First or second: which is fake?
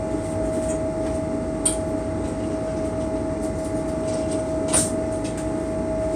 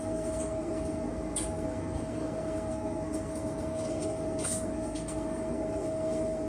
second